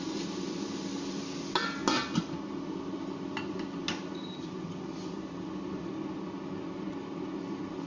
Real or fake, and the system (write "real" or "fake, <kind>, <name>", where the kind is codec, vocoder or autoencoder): real